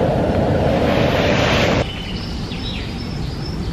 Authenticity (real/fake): fake